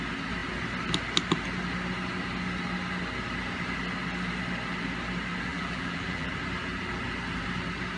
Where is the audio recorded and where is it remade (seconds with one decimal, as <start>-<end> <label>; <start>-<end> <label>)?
0.0-5.5 recorded; 5.5-6.3 remade; 6.3-8.0 recorded